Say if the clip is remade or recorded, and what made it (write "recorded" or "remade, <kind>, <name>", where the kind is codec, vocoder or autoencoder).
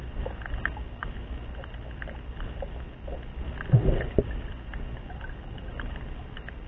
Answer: recorded